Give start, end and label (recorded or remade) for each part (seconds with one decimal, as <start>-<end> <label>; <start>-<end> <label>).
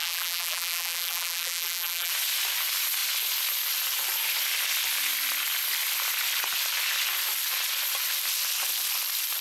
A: 0.0-2.1 remade; 2.1-9.4 recorded